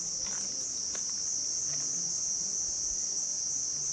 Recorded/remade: recorded